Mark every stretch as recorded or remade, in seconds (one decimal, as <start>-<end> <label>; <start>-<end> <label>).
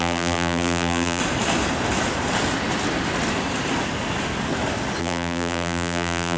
0.0-1.2 remade; 1.2-5.0 recorded; 5.0-6.4 remade